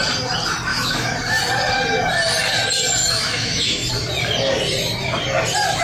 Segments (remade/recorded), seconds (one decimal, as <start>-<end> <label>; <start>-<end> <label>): 0.0-0.7 recorded; 0.7-1.4 remade; 1.4-3.0 recorded; 3.0-3.9 remade; 3.9-5.8 recorded